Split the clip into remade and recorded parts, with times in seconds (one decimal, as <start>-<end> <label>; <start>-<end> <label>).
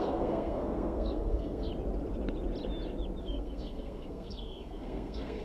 0.0-1.7 remade; 1.7-3.2 recorded; 3.2-5.4 remade